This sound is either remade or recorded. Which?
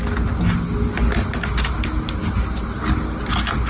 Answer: recorded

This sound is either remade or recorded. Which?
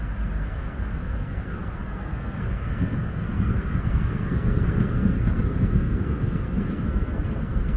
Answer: remade